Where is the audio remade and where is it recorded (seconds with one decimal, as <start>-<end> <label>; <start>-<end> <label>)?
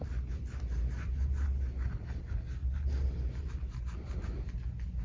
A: 0.0-5.0 recorded